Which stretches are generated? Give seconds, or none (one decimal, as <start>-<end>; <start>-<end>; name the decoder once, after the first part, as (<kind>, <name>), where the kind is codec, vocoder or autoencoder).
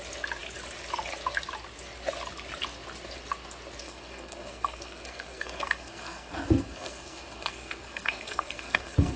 3.8-9.2 (codec, SNAC)